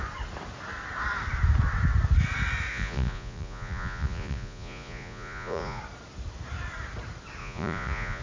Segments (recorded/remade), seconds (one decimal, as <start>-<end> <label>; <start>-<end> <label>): 0.0-2.7 recorded; 2.7-5.8 remade; 5.8-7.4 recorded; 7.4-8.2 remade